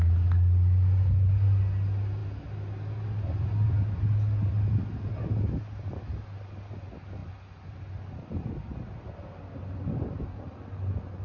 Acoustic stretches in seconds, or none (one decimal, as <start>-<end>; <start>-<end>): 0.0-11.2